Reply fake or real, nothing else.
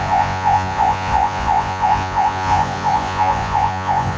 fake